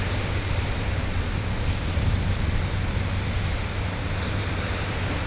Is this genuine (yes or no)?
no